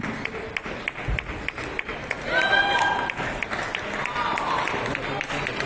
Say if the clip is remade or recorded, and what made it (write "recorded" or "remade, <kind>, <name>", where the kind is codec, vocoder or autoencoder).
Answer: recorded